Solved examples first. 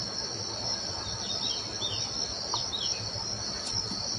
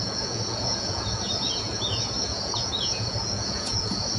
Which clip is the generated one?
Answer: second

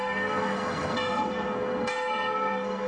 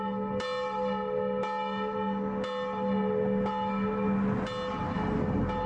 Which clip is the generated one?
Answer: first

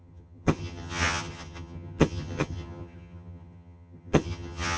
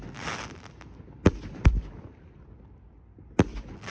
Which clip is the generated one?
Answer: first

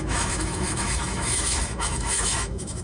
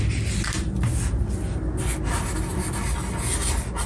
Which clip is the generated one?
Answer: first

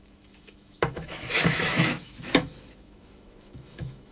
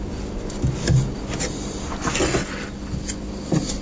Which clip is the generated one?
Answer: first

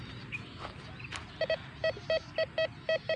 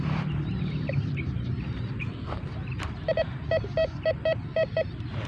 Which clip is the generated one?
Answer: second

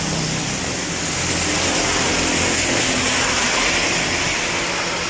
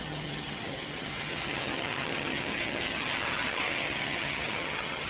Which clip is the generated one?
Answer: second